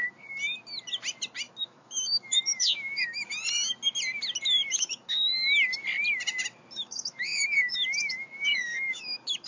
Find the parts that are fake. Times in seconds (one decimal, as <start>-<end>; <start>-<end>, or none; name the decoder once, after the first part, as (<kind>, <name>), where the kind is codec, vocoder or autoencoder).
1.6-3.3 (autoencoder, DAC-VAE); 4.7-5.3; 6.8-9.5